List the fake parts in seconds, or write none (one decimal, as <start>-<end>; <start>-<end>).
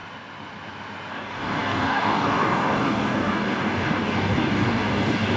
1.1-5.4